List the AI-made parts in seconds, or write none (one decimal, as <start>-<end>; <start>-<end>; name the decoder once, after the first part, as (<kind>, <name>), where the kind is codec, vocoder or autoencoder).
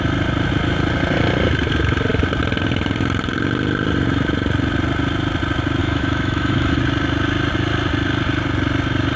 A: 5.8-6.8 (autoencoder, DAC-VAE)